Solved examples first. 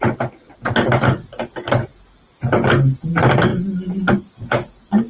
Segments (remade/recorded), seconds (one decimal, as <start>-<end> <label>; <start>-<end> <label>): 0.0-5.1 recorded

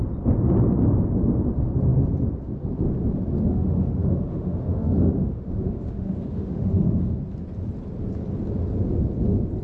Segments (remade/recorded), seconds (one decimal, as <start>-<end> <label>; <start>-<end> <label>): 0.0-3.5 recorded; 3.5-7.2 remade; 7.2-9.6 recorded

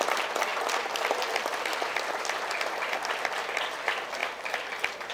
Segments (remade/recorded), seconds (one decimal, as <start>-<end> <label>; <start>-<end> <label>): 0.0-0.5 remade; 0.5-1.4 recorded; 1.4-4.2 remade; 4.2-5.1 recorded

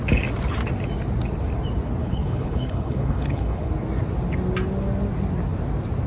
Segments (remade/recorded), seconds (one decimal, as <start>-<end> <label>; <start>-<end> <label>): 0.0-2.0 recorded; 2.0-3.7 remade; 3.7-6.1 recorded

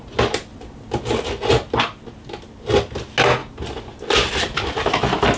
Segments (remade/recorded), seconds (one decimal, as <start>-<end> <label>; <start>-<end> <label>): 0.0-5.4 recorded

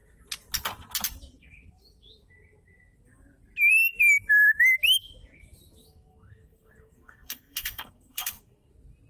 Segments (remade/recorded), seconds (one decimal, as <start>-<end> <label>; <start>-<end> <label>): 0.0-5.8 recorded; 5.8-8.7 remade; 8.7-9.1 recorded